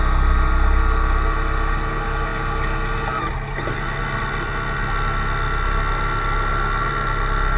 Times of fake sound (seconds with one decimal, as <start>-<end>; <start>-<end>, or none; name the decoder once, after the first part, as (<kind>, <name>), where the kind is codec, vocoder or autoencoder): none